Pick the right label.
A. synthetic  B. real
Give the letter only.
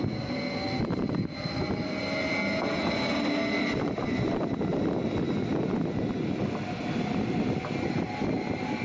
B